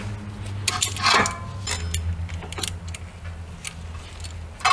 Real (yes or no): yes